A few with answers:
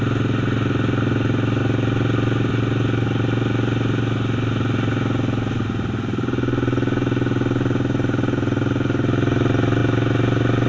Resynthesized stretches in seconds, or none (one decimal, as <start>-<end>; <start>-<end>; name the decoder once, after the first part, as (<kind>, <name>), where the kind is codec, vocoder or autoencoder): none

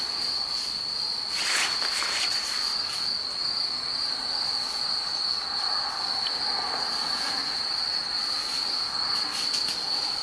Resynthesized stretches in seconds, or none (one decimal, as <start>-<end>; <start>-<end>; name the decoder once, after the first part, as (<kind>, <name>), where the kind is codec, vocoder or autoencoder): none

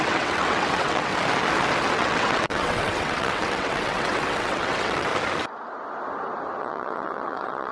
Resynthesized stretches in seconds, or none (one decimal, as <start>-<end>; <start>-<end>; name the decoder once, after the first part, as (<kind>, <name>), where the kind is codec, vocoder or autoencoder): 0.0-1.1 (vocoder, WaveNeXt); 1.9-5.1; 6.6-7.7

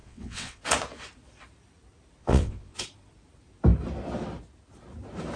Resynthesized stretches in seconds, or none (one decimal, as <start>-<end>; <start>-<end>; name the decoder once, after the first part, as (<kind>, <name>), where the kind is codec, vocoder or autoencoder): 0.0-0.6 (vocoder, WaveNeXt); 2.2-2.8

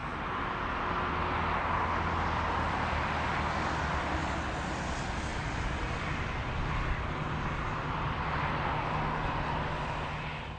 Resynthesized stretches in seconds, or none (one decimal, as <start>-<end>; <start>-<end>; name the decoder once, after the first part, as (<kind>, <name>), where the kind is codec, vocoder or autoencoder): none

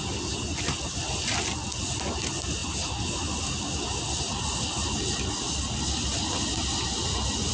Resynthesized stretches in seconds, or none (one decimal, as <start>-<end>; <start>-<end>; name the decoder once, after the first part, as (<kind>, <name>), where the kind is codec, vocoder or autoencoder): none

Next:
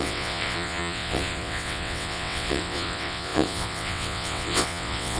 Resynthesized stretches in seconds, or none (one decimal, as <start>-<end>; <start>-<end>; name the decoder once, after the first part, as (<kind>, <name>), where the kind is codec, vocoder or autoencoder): 0.0-5.2 (vocoder, WaveNeXt)